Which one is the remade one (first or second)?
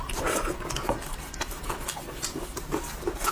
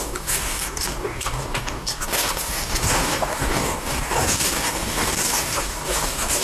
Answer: second